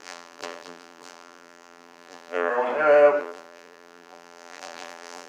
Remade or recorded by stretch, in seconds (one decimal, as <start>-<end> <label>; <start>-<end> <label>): 0.0-2.5 remade; 2.5-3.2 recorded; 3.2-5.3 remade